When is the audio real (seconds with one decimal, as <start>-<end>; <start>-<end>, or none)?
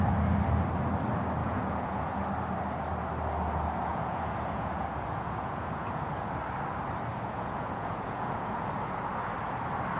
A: 0.0-1.4; 2.2-3.9; 6.3-7.1; 8.7-10.0